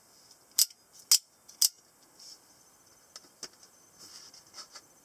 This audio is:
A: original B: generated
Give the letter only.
A